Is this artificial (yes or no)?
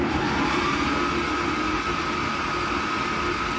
no